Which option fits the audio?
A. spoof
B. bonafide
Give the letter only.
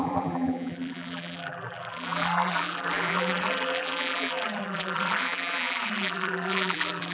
A